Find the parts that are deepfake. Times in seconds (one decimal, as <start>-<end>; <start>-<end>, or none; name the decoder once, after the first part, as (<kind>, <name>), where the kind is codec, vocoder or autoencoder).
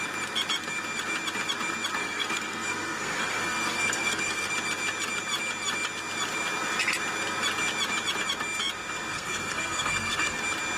2.0-4.5 (codec, SNAC); 9.1-10.4